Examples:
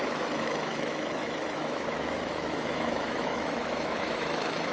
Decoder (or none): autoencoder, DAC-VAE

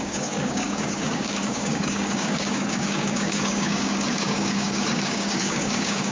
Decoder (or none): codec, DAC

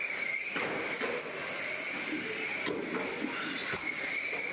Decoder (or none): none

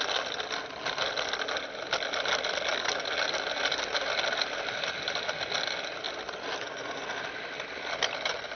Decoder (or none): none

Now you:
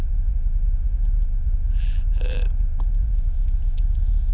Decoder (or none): vocoder, BigVGAN v2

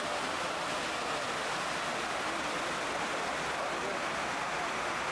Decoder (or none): none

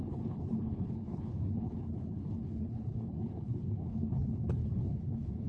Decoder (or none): codec, HILCodec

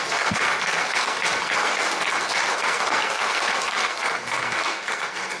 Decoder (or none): codec, SNAC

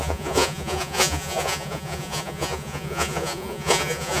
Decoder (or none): vocoder, Vocos